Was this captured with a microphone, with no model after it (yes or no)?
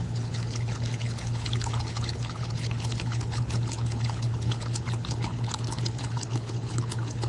no